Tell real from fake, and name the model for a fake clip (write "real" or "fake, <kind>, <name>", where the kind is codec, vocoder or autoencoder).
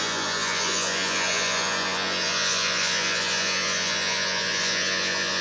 fake, vocoder, Vocos